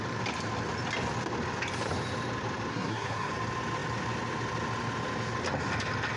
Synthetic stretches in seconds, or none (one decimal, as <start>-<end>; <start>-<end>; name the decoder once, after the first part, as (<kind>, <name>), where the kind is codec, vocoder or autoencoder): 2.7-3.3 (codec, SNAC)